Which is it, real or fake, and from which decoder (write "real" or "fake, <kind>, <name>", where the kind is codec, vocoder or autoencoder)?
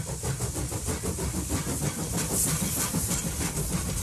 real